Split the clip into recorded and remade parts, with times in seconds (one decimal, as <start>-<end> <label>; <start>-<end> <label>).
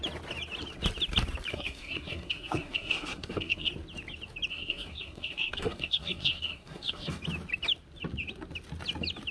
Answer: 0.0-1.5 recorded; 1.5-3.7 remade; 3.7-4.5 recorded; 4.5-7.2 remade; 7.2-9.3 recorded